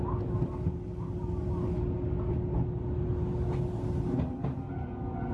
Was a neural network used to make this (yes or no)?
no